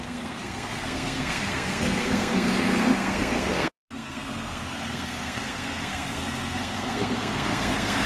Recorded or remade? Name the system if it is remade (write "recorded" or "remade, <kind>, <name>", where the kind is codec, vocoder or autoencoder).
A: remade, codec, SNAC